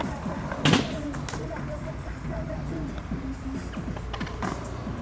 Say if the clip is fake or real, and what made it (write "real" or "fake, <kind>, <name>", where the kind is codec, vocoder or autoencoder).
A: real